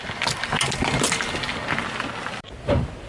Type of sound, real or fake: real